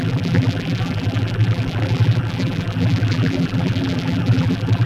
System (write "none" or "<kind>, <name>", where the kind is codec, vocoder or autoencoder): vocoder, BigVGAN v2